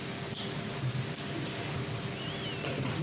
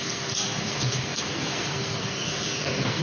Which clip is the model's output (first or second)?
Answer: second